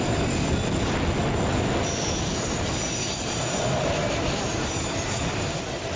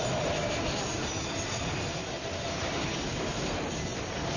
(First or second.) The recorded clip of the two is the second